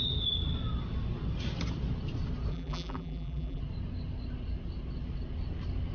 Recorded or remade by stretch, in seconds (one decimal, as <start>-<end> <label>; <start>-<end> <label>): 0.0-2.5 recorded; 2.5-3.6 remade; 3.6-5.9 recorded